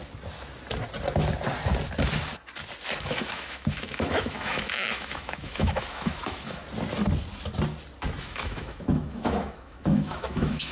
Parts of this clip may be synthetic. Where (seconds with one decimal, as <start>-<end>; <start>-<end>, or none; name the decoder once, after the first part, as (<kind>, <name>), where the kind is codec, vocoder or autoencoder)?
3.0-6.6 (autoencoder, DAC-VAE); 8.2-10.7